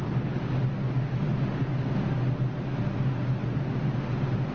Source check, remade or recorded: recorded